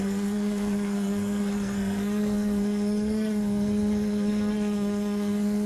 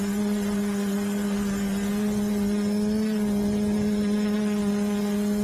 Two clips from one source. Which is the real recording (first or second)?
second